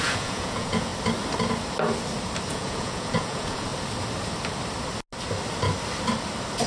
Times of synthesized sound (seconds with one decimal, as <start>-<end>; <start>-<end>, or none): 0.0-0.9; 2.5-3.7

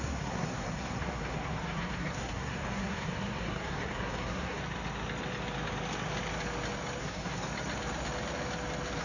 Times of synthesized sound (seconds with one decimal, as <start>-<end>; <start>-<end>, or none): 0.0-4.6; 7.0-7.5

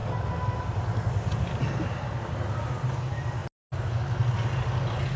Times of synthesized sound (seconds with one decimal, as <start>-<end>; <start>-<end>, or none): none

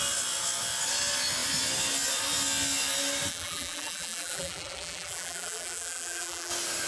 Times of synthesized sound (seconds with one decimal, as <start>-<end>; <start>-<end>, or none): 3.3-6.5

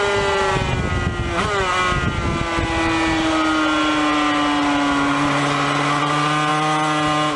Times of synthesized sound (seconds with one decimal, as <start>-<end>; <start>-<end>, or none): none

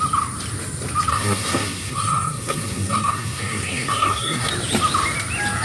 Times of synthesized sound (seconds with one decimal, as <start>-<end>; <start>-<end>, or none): 1.1-4.5